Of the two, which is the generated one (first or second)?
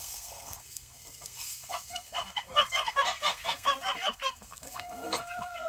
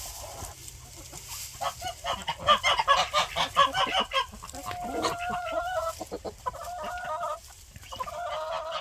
first